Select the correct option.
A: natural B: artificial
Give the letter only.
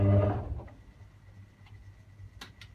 A